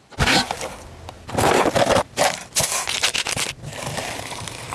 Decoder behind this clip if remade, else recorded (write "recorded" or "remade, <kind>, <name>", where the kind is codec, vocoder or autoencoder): recorded